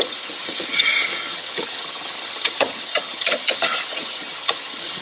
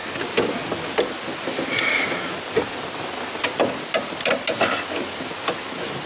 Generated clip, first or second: first